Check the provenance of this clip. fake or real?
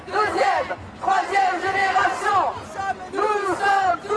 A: real